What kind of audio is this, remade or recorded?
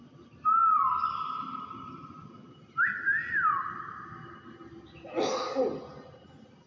recorded